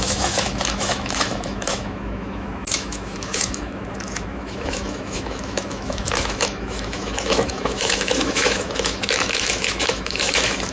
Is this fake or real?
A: fake